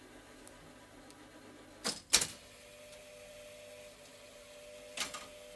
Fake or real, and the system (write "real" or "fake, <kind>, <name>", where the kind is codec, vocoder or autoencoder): real